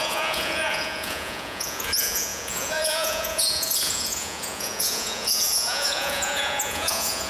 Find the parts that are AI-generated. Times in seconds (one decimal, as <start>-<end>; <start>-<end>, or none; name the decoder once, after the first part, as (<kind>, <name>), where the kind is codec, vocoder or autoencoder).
0.0-7.3 (vocoder, Vocos)